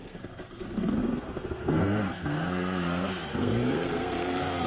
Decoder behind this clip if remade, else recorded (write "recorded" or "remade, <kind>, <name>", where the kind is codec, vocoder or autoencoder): remade, codec, SNAC